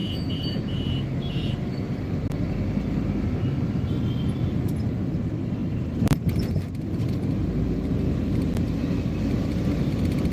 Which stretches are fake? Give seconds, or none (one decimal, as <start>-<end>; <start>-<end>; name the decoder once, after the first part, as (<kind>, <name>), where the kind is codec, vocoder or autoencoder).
0.0-1.3 (vocoder, BigVGAN v2); 5.6-6.6